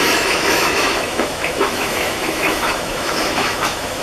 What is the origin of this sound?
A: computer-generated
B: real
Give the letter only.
A